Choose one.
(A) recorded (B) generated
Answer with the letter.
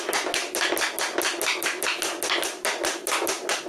A